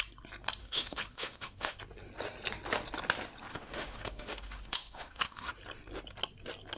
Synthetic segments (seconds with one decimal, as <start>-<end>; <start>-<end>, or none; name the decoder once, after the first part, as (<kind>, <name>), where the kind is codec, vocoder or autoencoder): 0.6-1.8 (autoencoder, DAC-VAE); 3.5-5.5